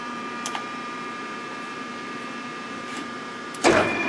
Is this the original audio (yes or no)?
no